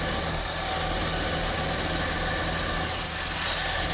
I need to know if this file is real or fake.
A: real